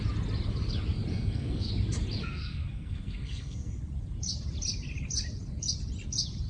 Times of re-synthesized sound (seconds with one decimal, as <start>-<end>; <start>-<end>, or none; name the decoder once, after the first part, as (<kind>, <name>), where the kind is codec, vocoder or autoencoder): 1.1-1.7 (codec, SNAC); 2.2-3.7